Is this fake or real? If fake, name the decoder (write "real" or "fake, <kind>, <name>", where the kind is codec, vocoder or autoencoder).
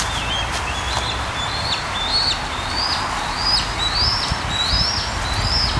real